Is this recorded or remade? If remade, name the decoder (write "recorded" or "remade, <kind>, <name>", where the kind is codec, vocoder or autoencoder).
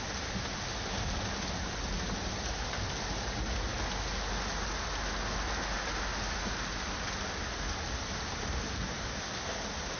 recorded